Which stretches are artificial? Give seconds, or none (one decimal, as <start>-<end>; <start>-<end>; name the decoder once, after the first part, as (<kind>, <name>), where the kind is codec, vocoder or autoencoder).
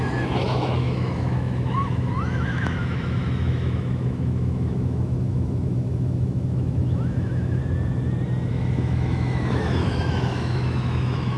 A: 0.0-7.6 (autoencoder, DAC-VAE); 8.5-11.4